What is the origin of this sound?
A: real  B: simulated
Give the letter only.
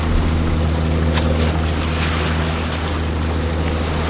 A